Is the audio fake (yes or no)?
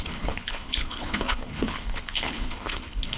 yes